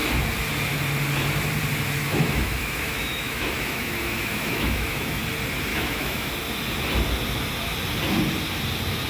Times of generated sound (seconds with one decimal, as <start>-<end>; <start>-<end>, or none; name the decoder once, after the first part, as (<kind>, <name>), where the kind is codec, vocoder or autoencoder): 2.0-5.2 (autoencoder, DAC-VAE); 5.7-6.3